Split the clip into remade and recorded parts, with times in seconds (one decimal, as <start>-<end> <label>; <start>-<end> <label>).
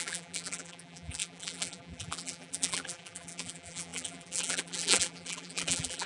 0.0-6.1 remade